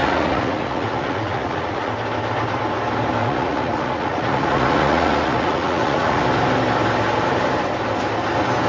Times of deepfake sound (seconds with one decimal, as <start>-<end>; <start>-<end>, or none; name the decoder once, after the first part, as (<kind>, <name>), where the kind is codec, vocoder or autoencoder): 0.0-1.9 (vocoder, Vocos); 3.2-6.2